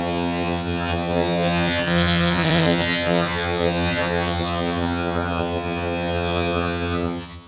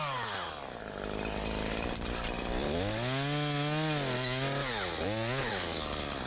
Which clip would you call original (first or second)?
second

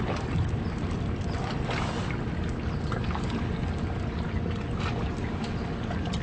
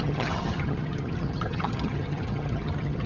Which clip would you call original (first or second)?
first